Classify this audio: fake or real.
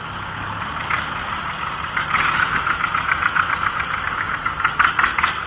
real